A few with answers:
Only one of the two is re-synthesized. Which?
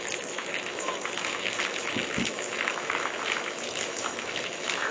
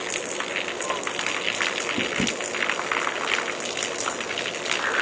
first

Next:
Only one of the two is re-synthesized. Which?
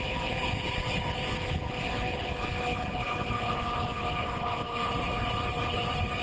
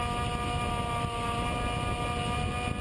first